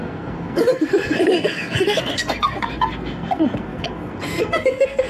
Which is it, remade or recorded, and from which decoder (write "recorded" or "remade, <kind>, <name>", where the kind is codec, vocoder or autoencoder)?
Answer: remade, codec, SNAC